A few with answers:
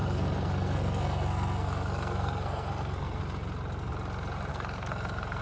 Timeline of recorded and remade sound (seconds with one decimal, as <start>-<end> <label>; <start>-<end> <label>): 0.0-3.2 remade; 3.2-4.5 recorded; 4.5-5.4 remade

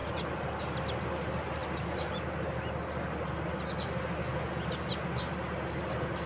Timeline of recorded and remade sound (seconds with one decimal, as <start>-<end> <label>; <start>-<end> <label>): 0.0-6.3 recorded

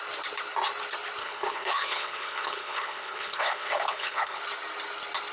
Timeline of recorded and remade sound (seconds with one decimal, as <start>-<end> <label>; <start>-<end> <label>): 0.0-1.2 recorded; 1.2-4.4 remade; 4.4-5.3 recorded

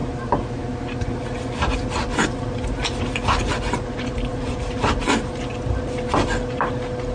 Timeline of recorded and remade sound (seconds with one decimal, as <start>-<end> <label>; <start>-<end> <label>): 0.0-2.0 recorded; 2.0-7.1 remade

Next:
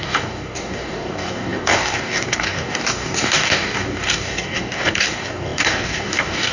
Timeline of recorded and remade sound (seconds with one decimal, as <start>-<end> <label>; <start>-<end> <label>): 0.0-6.5 remade